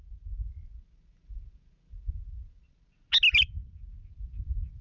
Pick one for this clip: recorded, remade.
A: recorded